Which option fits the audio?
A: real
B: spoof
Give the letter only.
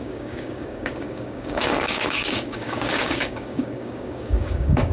B